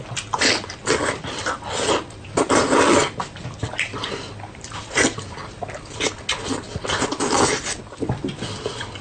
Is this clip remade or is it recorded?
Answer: recorded